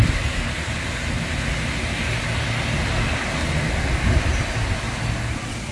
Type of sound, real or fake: real